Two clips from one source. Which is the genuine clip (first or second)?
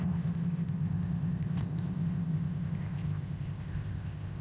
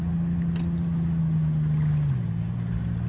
second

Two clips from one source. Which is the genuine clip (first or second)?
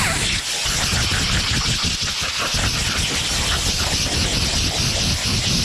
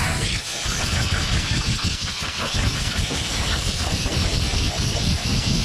first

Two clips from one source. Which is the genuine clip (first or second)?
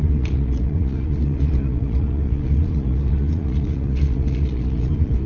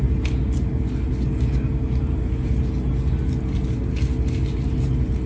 second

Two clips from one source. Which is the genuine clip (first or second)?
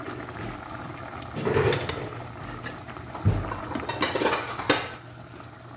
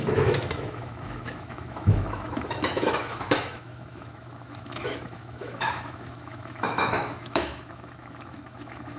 first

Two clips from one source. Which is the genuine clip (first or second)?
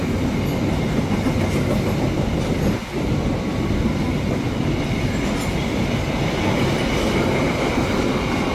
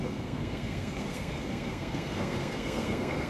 first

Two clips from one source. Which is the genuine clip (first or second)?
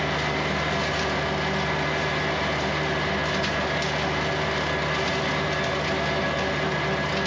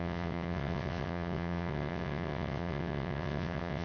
first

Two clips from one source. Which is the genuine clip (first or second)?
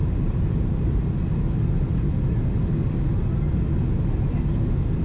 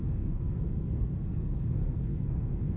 first